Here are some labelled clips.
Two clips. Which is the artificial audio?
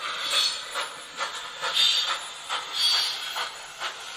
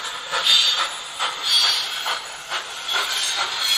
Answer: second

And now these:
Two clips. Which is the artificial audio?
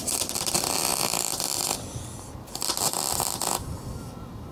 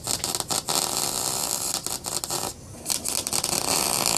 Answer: first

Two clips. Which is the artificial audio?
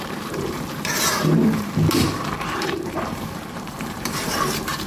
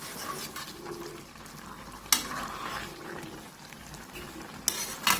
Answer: first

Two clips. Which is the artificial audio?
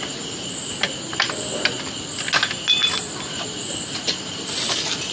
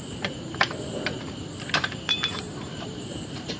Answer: second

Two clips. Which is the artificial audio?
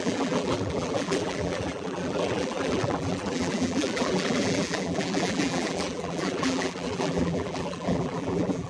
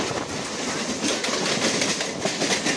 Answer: first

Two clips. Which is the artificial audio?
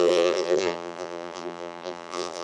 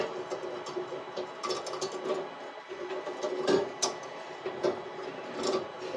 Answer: first